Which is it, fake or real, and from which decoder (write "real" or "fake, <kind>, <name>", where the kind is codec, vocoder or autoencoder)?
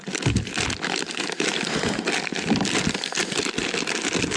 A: real